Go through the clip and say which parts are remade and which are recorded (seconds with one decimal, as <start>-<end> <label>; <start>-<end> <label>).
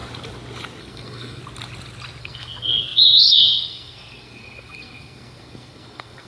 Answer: 0.0-0.8 recorded; 0.8-1.4 remade; 1.4-2.2 recorded; 2.2-6.3 remade